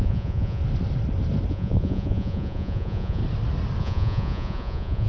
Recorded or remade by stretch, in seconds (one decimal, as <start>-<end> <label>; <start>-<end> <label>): 0.0-0.6 remade; 0.6-1.5 recorded; 1.5-3.2 remade; 3.2-3.8 recorded; 3.8-5.1 remade